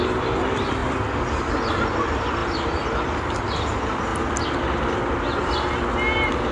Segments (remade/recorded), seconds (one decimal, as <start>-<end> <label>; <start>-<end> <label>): 0.0-2.4 recorded; 2.4-3.4 remade; 3.4-6.5 recorded